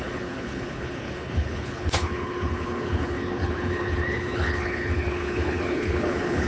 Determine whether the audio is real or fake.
fake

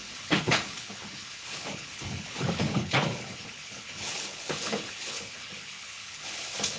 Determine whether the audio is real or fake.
fake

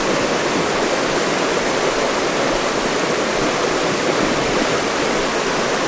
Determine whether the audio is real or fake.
real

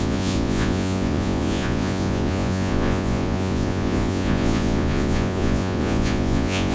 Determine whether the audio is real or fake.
fake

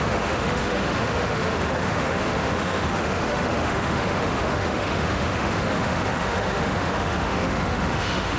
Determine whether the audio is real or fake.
fake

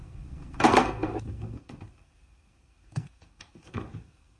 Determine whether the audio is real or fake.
fake